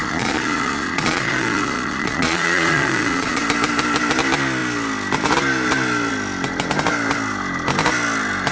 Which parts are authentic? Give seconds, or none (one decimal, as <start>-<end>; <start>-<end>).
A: 3.4-8.5